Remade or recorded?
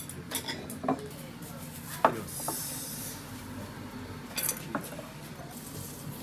recorded